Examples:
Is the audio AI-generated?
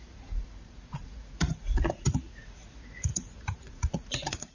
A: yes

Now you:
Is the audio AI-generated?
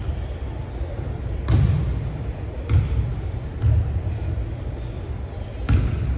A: no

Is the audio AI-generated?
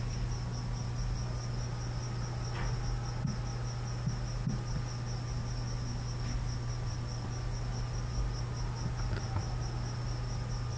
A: no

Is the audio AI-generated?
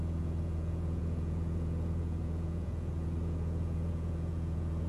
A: yes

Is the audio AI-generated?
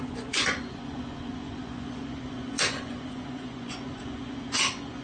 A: yes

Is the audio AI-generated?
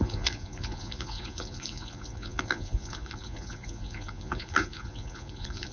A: yes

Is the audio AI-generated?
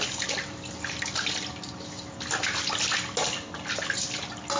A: no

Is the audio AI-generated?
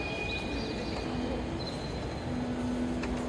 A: no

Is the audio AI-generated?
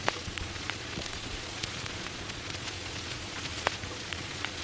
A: yes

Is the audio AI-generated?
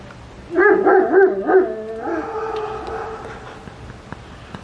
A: no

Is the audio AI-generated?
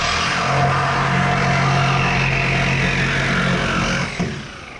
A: no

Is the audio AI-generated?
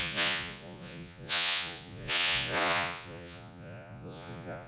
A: yes